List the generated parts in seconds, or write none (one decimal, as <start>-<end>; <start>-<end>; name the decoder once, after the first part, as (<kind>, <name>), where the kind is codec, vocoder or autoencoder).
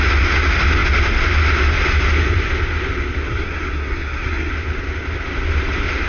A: 3.3-4.5 (codec, SNAC)